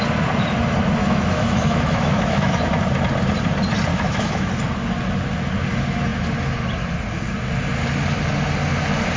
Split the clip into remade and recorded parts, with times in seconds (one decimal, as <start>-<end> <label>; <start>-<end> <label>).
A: 0.0-1.0 recorded; 1.0-2.7 remade; 2.7-3.9 recorded; 3.9-4.5 remade; 4.5-9.2 recorded